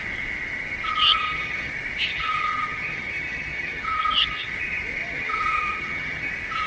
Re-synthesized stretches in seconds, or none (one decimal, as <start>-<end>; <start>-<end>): 1.0-1.7; 2.1-4.5; 5.0-6.3